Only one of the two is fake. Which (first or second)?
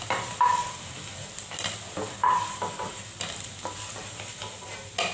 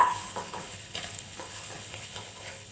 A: second